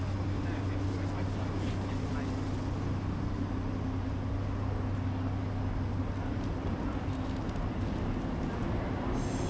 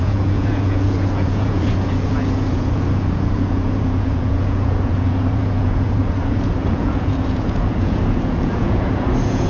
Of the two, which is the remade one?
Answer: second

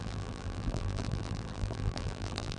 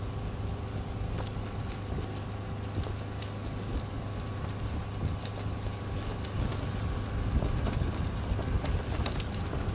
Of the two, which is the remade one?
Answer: first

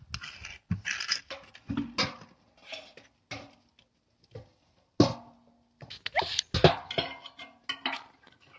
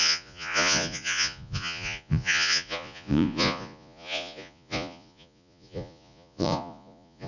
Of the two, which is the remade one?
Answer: second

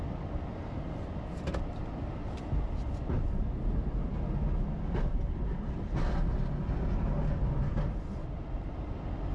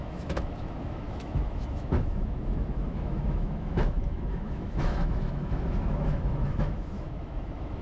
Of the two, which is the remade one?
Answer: second